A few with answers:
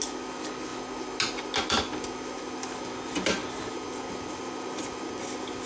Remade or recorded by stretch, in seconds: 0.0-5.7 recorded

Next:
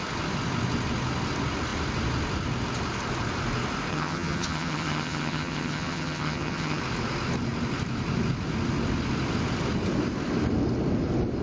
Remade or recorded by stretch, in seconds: 0.0-3.9 recorded; 3.9-6.8 remade; 6.8-11.4 recorded

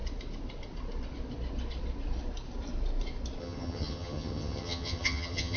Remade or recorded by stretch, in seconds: 0.0-3.4 recorded; 3.4-5.6 remade

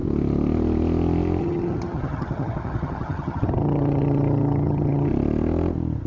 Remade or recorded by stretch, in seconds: 0.0-1.4 recorded; 1.4-5.1 remade; 5.1-6.1 recorded